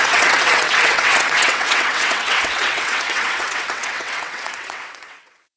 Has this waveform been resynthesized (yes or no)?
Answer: yes